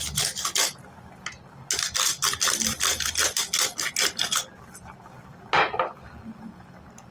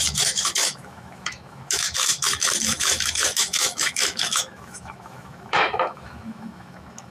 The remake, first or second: second